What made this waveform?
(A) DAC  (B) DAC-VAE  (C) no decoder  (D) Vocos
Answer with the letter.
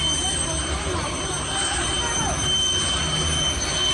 C